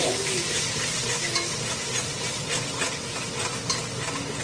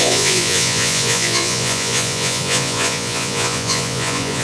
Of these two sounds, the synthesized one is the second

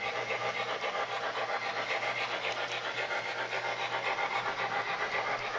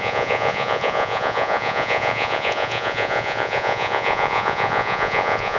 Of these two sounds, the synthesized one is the second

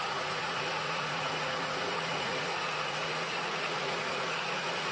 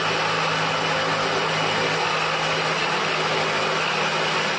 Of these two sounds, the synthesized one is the first